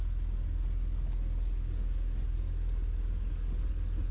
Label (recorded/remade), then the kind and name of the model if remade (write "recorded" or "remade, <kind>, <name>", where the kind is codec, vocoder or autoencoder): recorded